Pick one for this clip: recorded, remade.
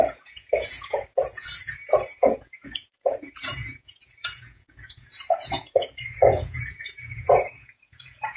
remade